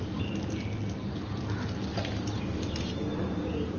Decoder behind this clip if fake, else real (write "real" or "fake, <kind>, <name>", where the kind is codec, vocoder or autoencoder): real